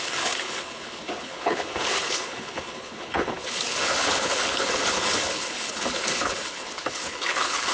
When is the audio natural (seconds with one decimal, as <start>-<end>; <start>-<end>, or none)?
none